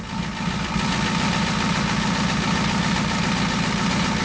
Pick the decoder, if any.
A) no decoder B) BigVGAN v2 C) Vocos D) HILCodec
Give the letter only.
A